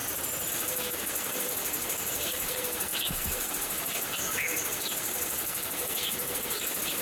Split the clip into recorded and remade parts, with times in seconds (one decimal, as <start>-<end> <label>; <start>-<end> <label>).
0.0-0.5 recorded; 0.5-7.0 remade